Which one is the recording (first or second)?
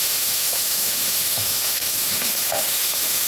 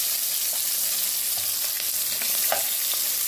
second